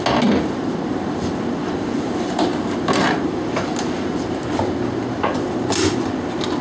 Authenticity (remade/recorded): recorded